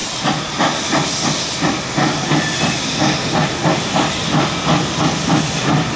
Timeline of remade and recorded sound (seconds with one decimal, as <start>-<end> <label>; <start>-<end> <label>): 0.0-6.0 recorded

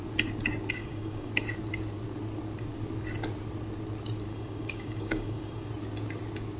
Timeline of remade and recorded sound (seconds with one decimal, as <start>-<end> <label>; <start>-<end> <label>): 0.0-0.8 recorded; 0.8-1.3 remade; 1.3-4.3 recorded; 4.3-5.7 remade; 5.7-6.6 recorded

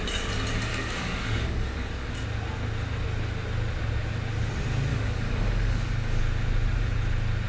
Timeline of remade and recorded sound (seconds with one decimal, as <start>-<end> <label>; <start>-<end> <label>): 0.0-0.7 recorded; 0.7-2.1 remade; 2.1-4.9 recorded; 4.9-6.2 remade; 6.2-7.5 recorded

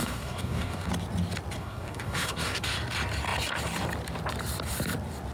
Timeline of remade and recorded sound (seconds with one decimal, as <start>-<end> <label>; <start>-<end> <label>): 0.0-0.9 remade; 0.9-1.6 recorded; 1.6-2.6 remade; 2.6-5.3 recorded

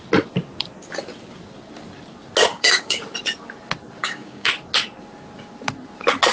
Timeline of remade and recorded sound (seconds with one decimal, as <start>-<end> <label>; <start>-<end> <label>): 0.0-2.5 recorded; 2.5-3.0 remade; 3.0-4.0 recorded; 4.0-4.5 remade; 4.5-6.3 recorded